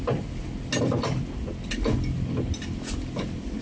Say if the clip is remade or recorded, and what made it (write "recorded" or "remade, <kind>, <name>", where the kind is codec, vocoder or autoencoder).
recorded